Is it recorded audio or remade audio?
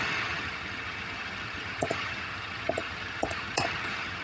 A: remade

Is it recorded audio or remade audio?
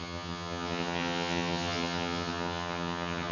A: remade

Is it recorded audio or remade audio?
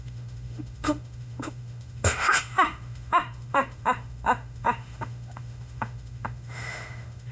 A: remade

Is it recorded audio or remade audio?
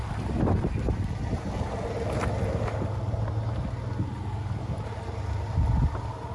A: recorded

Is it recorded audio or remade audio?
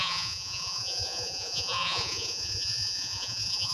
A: remade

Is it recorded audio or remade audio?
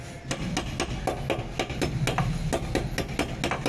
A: recorded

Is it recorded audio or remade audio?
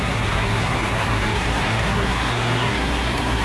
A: remade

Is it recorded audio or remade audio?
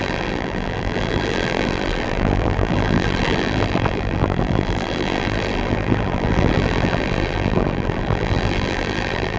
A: remade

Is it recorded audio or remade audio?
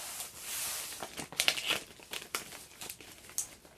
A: recorded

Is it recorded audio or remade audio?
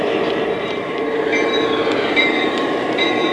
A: remade